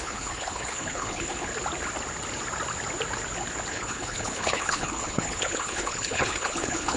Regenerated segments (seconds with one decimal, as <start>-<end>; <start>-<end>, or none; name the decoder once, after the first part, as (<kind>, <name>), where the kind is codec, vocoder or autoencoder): 0.0-1.5 (codec, HILCodec); 3.7-7.0